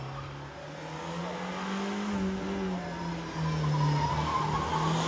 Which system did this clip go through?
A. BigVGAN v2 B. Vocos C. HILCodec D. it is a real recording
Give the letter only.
D